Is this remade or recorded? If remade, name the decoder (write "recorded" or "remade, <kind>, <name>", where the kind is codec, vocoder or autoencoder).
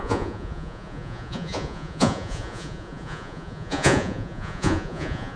remade, vocoder, Vocos